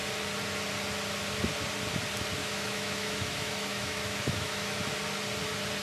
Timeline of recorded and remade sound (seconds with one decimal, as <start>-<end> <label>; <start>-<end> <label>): 0.0-2.4 recorded; 2.4-4.8 remade; 4.8-5.8 recorded